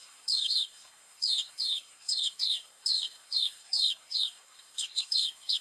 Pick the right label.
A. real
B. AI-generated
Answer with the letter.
B